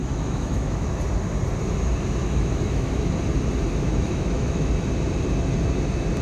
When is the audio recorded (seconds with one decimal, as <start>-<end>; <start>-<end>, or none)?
1.0-2.2; 3.1-3.7; 4.7-6.2